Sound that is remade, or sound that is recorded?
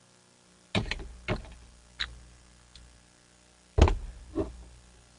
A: recorded